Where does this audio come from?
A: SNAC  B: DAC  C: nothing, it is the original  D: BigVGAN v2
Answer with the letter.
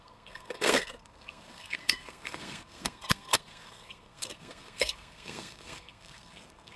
A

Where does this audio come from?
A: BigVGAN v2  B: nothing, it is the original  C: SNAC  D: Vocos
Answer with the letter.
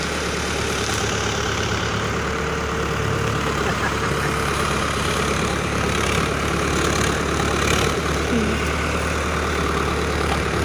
A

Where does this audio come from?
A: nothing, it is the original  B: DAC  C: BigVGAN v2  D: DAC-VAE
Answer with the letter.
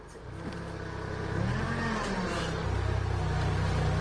A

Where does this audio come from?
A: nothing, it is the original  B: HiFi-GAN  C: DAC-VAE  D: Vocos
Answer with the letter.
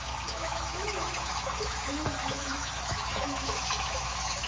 C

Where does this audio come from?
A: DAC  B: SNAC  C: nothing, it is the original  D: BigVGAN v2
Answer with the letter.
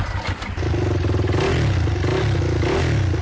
C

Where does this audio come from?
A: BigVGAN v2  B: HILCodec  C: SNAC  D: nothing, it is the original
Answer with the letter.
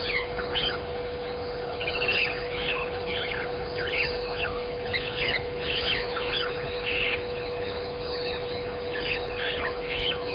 B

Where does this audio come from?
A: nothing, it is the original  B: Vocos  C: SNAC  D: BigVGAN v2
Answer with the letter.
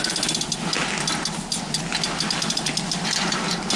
A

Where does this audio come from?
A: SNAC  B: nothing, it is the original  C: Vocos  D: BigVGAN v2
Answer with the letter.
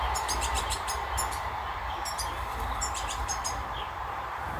D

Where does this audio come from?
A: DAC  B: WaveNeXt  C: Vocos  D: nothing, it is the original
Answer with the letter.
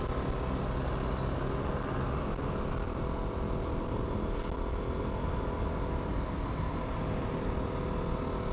D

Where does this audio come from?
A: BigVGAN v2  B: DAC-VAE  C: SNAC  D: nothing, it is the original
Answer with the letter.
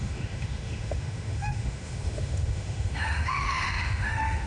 B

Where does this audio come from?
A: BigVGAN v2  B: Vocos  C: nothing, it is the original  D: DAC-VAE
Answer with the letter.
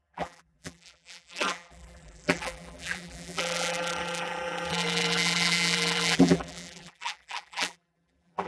A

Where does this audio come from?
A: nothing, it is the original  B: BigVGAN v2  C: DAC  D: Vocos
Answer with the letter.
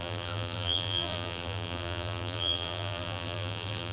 B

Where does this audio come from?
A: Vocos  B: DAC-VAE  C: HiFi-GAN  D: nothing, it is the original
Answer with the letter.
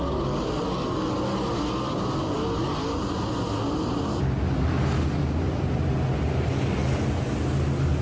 D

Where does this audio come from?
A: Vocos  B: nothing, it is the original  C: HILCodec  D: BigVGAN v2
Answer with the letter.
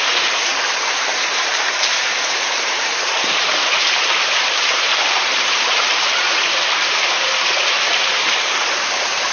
D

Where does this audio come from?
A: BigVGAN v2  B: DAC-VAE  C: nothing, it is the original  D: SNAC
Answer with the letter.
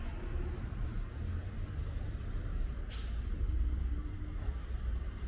C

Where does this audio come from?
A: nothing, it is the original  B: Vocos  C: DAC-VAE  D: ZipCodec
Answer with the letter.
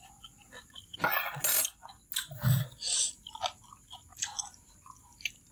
A